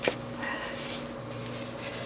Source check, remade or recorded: recorded